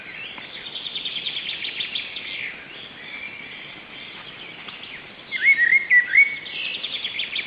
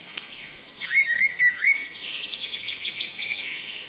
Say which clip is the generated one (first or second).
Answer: second